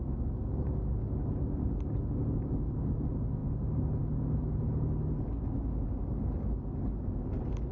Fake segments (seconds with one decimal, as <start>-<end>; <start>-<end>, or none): none